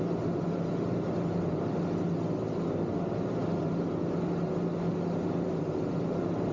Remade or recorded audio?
recorded